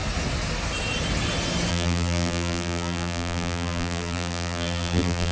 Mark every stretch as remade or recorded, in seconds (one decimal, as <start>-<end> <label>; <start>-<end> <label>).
0.0-1.7 recorded; 1.7-5.3 remade